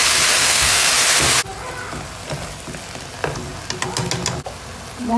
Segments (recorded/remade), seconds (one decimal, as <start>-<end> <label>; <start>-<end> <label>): 0.0-0.4 recorded; 0.4-0.9 remade; 0.9-5.2 recorded